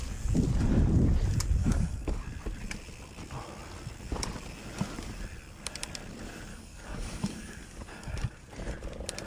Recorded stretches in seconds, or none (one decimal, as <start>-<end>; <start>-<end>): 0.0-1.6; 2.2-6.5; 8.5-9.3